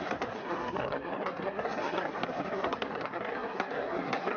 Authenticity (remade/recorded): remade